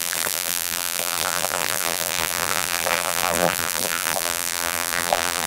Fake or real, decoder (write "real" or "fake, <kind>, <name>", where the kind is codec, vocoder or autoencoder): fake, vocoder, BigVGAN v2